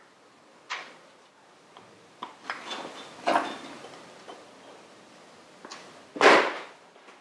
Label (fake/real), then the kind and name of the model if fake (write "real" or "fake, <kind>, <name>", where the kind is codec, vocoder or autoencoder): real